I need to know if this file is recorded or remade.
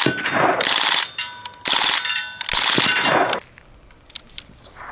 recorded